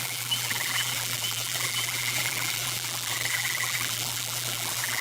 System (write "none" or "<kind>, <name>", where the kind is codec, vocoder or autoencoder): vocoder, BigVGAN v2